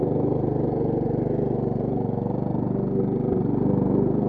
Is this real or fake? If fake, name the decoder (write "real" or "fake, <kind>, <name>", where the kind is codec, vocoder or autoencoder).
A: real